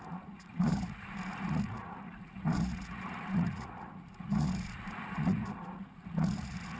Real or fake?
fake